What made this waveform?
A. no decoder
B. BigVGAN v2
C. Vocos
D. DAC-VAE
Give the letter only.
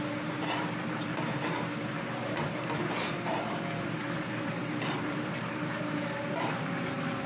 B